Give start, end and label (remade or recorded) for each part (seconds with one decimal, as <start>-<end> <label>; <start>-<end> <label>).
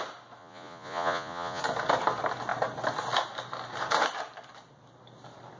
0.0-0.4 recorded; 0.4-1.6 remade; 1.6-5.6 recorded